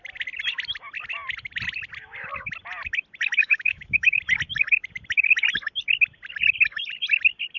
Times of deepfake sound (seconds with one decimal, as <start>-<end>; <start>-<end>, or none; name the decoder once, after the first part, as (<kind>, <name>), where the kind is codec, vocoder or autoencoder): 3.4-4.2 (autoencoder, DAC-VAE)